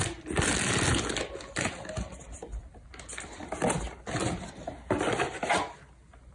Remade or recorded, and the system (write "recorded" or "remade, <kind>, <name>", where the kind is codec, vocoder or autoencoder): recorded